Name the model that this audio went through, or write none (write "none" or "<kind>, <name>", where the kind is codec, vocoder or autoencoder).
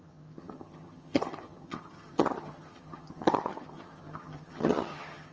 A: vocoder, HiFi-GAN